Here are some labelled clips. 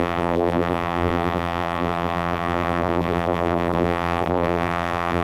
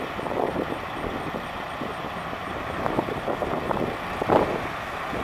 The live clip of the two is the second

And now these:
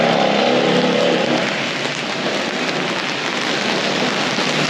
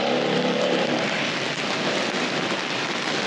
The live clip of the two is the first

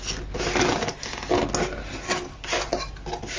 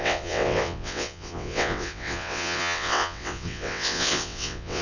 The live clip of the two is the first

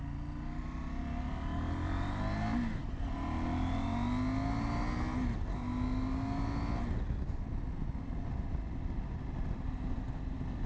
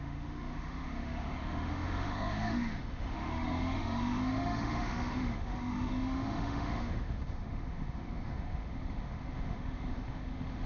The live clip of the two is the first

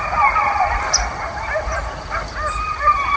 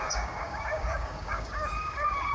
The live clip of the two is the first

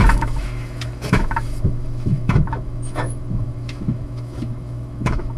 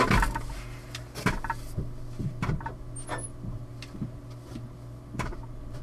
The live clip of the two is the second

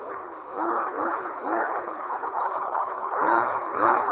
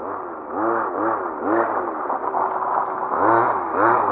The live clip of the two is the second